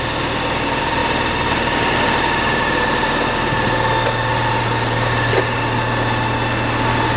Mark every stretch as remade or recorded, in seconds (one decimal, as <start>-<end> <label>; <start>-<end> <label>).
0.0-7.2 recorded